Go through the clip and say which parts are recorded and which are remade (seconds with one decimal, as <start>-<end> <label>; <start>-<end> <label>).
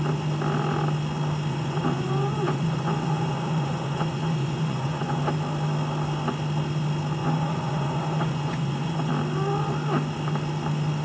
0.0-1.5 recorded; 1.5-5.2 remade; 5.2-7.2 recorded; 7.2-9.1 remade; 9.1-11.0 recorded